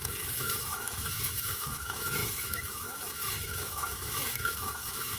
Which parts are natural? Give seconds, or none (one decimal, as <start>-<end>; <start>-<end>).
none